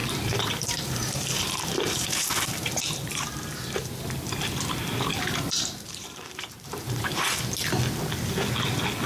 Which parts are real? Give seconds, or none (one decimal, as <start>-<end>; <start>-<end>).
4.1-5.1; 7.4-9.1